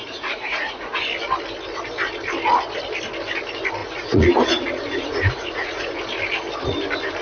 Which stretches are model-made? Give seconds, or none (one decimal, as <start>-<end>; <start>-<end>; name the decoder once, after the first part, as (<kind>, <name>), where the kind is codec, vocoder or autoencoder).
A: 0.0-1.0 (vocoder, Vocos); 3.8-6.0

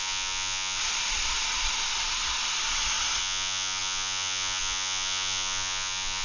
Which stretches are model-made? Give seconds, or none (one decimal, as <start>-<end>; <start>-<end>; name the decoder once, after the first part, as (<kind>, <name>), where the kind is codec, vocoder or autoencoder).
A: 0.0-0.8 (vocoder, Vocos); 3.2-6.2